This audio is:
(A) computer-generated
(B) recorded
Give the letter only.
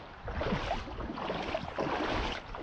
B